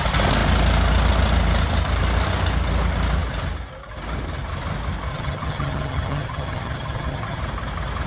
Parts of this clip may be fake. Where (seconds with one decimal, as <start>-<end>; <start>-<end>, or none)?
5.1-7.4